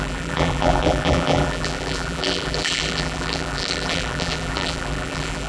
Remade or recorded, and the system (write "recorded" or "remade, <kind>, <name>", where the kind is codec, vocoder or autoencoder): remade, vocoder, BigVGAN v2